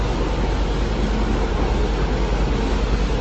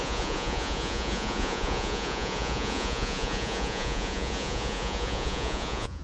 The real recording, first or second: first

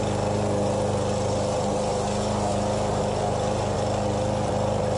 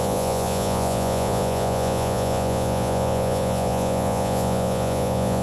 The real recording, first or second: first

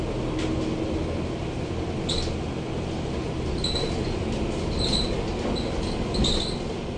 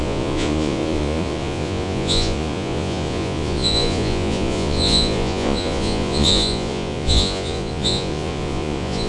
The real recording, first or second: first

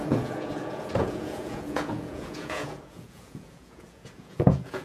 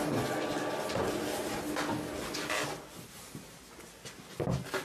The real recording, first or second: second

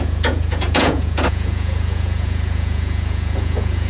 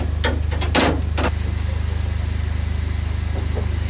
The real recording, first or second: second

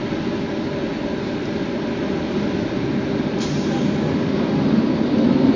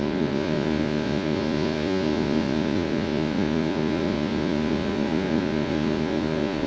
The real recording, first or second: first